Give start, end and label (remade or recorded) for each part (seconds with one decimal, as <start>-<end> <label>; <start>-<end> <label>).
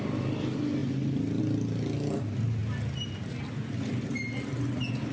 0.0-5.1 recorded